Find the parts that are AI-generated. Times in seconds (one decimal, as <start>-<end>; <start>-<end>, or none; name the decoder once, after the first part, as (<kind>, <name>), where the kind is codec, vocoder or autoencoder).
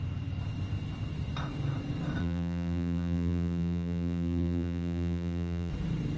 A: 2.2-5.7 (vocoder, BigVGAN v2)